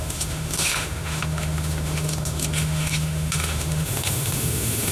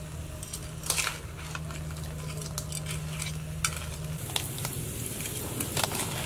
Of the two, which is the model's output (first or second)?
first